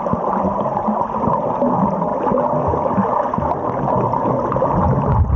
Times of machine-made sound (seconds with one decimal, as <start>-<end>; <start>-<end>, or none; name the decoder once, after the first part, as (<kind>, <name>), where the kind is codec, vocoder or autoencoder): none